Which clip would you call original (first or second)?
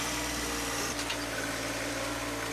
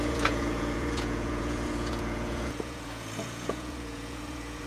first